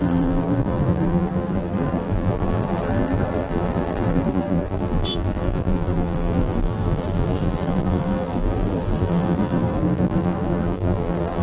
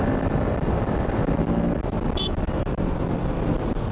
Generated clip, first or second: first